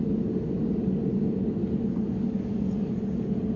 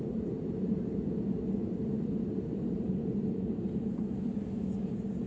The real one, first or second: first